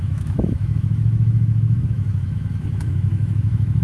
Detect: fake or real fake